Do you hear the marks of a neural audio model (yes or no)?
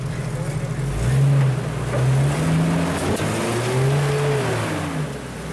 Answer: no